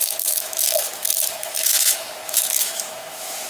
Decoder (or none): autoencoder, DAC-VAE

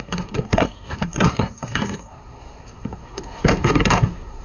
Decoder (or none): codec, SNAC